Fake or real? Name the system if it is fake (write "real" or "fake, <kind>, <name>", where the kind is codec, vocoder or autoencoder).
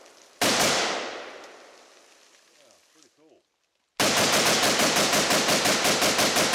real